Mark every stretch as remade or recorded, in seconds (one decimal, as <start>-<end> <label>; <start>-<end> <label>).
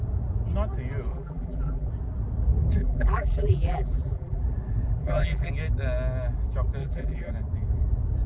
0.0-1.1 recorded; 1.1-1.9 remade; 1.9-2.8 recorded; 2.8-4.4 remade; 4.4-5.0 recorded; 5.0-5.5 remade; 5.5-6.8 recorded; 6.8-7.3 remade; 7.3-8.3 recorded